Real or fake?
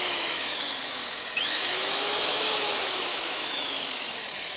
fake